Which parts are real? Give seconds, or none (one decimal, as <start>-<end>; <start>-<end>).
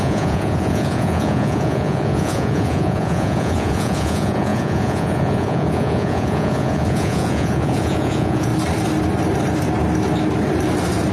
8.5-11.1